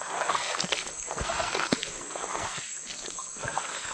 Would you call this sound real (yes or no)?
no